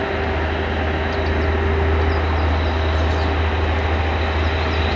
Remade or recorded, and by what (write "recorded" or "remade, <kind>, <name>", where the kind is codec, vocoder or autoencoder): recorded